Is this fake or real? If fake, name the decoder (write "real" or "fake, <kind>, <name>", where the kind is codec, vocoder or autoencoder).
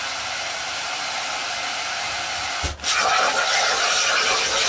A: fake, vocoder, BigVGAN v2